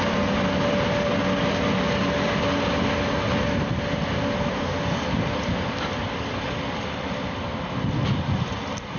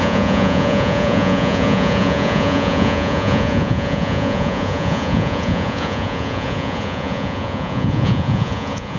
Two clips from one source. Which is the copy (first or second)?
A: second